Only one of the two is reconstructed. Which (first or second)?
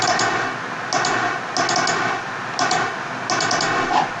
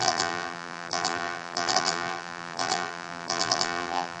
second